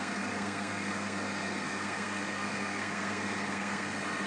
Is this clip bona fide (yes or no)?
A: no